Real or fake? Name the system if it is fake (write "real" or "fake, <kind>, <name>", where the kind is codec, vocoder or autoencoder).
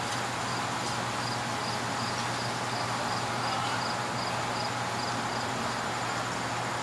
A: real